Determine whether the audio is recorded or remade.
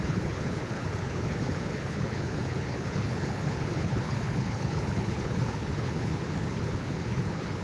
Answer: remade